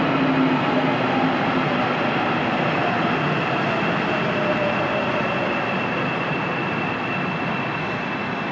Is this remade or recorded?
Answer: recorded